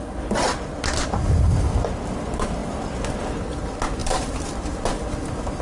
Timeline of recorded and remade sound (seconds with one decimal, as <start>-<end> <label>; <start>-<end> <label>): 0.0-4.0 recorded; 4.0-4.7 remade; 4.7-5.6 recorded